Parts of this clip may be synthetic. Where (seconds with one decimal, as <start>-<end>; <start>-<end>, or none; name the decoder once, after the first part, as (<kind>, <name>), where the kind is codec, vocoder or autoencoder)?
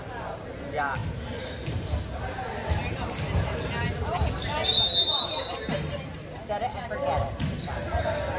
none